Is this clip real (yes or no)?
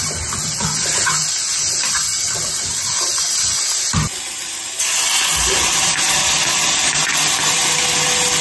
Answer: yes